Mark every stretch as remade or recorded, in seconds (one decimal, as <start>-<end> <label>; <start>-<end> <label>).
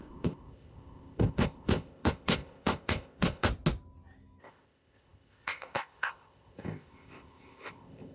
0.0-3.5 remade; 3.5-4.4 recorded; 4.4-8.1 remade